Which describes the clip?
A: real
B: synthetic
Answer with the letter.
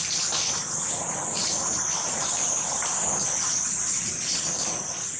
A